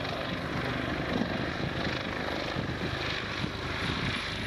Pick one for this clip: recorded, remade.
recorded